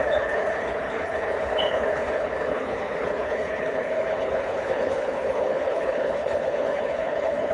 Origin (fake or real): fake